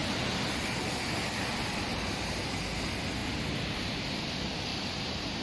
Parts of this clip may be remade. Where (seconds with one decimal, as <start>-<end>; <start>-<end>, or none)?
3.2-4.2; 4.7-5.4